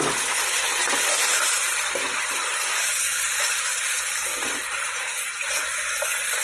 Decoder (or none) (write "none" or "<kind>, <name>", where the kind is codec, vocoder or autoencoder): none